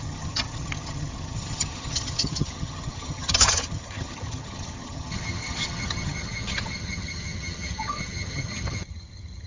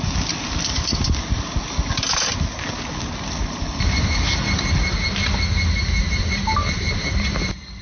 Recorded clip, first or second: second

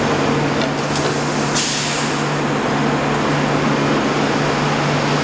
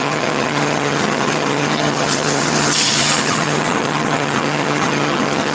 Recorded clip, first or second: first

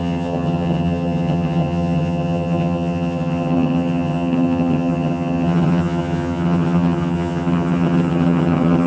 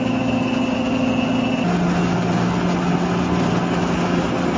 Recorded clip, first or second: second